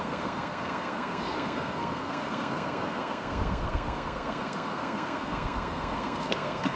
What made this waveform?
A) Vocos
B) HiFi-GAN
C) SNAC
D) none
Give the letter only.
C